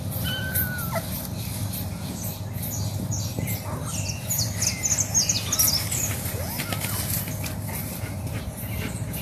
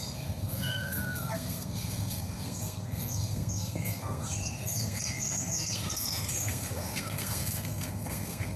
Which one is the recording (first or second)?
first